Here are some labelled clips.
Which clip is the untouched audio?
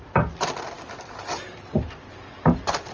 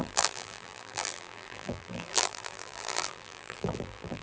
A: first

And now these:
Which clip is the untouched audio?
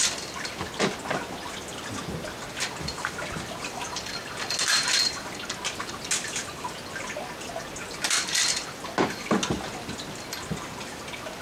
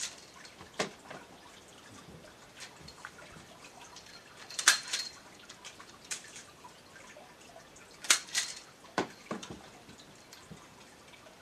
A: first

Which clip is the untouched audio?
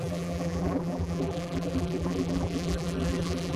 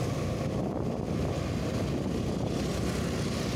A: second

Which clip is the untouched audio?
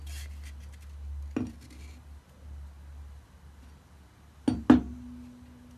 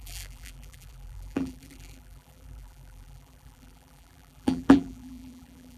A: first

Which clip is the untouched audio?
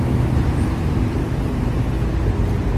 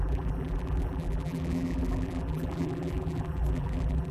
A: first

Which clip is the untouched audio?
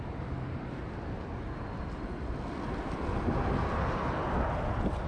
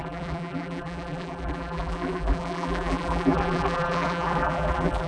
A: first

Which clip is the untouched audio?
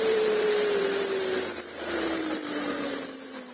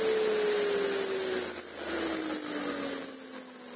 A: second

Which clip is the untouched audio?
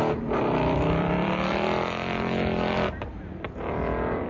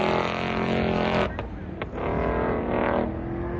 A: second